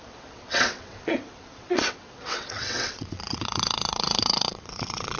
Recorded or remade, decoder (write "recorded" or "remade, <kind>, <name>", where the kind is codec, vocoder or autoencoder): remade, vocoder, WaveNeXt